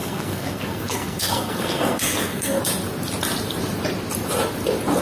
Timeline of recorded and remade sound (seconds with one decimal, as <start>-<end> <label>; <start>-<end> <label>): 0.0-2.6 remade; 2.6-5.0 recorded